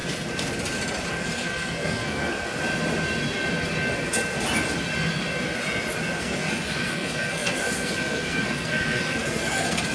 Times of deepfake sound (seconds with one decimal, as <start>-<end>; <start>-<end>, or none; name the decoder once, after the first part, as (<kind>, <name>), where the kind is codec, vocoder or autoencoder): 1.1-2.4 (codec, SNAC); 6.2-9.9